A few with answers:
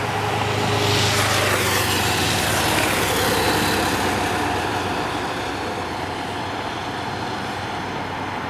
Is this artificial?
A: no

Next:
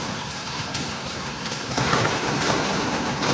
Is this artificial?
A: yes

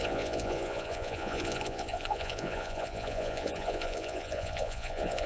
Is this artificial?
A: yes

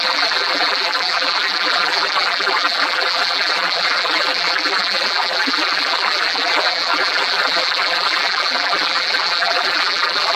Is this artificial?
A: yes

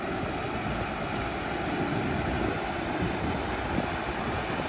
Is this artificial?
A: no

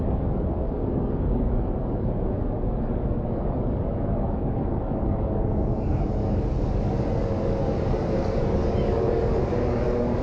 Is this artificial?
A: yes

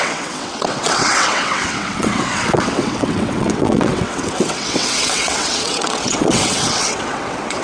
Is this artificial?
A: yes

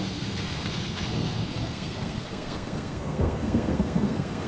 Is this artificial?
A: yes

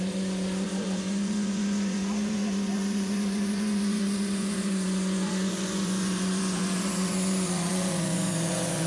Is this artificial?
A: yes